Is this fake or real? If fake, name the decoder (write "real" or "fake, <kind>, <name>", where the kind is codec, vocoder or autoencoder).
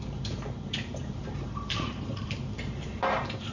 fake, vocoder, BigVGAN v2